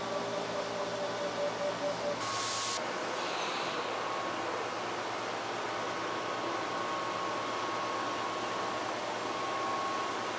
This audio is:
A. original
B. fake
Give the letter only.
A